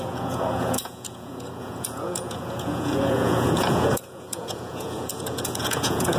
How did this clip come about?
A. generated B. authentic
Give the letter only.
A